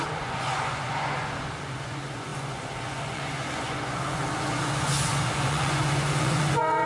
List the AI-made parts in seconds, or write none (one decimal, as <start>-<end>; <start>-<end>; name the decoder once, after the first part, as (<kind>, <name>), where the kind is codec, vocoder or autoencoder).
0.0-6.9 (vocoder, Vocos)